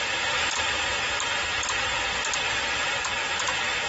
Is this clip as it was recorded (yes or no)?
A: yes